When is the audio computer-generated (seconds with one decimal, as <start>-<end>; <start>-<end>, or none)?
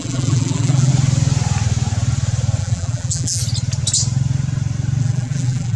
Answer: 0.0-0.9; 2.6-3.4; 5.0-5.8